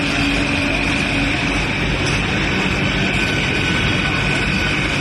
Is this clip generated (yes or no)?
no